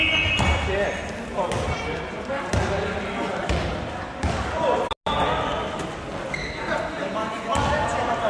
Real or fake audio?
real